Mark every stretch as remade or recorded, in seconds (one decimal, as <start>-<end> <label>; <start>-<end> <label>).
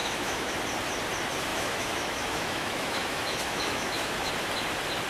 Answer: 0.0-0.5 remade; 0.5-1.5 recorded; 1.5-4.3 remade; 4.3-5.1 recorded